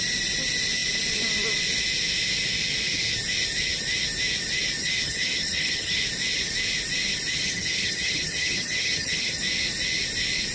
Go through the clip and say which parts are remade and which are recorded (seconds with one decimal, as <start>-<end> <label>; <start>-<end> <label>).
0.0-4.8 recorded; 4.8-6.0 remade; 6.0-7.3 recorded; 7.3-9.4 remade; 9.4-10.5 recorded